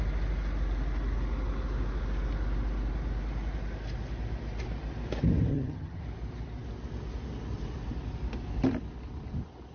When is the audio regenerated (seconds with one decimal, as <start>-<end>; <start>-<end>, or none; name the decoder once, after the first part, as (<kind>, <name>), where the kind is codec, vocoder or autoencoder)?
5.5-6.0 (vocoder, HiFi-GAN)

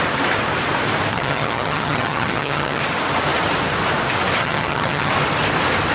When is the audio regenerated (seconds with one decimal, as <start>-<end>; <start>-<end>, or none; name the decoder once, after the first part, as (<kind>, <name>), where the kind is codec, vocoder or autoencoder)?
1.1-2.8 (vocoder, HiFi-GAN); 4.4-5.1

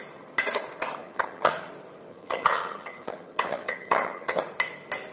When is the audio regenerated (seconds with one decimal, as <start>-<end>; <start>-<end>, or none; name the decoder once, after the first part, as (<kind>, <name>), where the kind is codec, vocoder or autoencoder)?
1.0-1.7 (vocoder, HiFi-GAN); 2.1-4.4

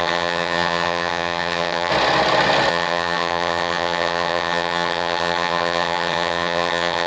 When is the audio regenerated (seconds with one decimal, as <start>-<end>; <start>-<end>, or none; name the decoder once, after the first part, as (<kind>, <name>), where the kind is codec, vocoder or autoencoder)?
0.0-1.9 (vocoder, HiFi-GAN); 2.7-7.1

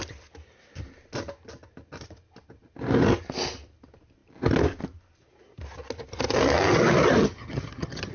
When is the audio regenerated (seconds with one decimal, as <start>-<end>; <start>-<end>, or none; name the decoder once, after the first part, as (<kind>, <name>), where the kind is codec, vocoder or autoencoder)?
7.2-8.1 (vocoder, HiFi-GAN)